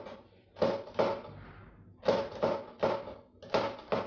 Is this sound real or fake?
real